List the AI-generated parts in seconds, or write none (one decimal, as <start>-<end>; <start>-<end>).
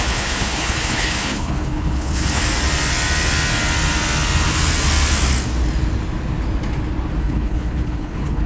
0.0-2.4; 7.2-8.5